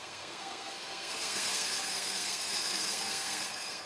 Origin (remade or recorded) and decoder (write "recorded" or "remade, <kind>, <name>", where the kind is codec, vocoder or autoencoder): remade, codec, SNAC